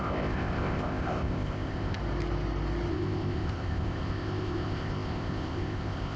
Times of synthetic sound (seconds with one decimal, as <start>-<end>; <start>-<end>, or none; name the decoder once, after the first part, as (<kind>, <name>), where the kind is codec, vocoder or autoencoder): 0.0-2.0 (codec, ZipCodec); 2.9-6.2